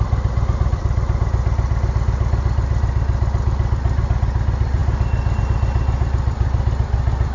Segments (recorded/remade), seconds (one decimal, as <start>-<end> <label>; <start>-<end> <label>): 0.0-7.3 recorded